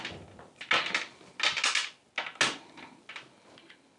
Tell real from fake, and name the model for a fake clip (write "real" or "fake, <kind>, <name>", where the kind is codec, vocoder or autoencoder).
real